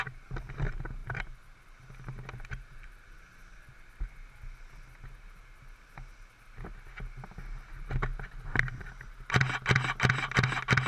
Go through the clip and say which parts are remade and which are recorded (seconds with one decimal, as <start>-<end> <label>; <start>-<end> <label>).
0.0-10.9 recorded